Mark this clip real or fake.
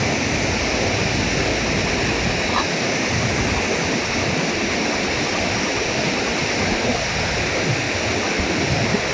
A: real